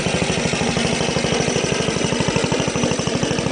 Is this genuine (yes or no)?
yes